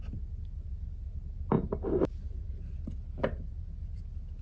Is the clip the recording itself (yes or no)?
yes